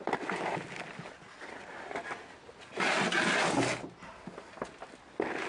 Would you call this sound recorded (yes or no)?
yes